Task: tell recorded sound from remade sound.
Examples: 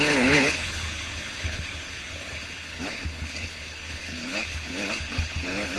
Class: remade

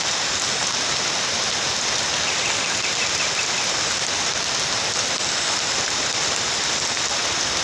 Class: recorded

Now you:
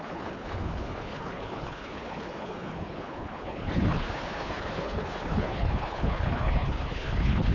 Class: remade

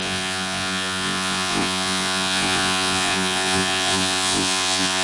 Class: remade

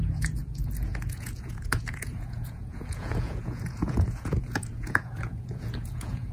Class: remade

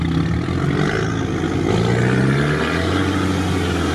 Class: recorded